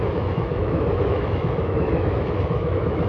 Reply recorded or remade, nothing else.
remade